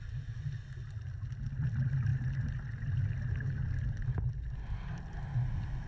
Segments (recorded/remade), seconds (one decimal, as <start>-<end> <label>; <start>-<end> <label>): 0.0-5.9 recorded